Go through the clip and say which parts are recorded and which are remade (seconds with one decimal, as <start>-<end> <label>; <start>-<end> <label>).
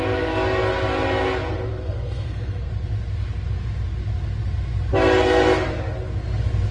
0.0-1.7 recorded; 1.7-2.7 remade; 2.7-6.7 recorded